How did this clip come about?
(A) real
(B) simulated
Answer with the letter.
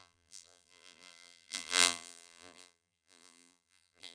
B